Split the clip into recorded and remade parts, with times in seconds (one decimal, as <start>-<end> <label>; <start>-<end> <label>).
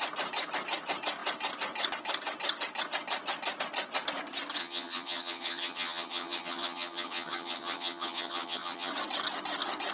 0.0-4.6 recorded; 4.6-8.9 remade; 8.9-9.9 recorded